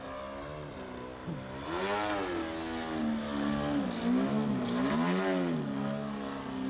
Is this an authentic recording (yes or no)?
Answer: yes